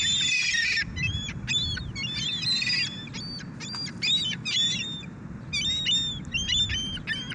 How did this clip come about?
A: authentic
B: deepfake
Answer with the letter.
A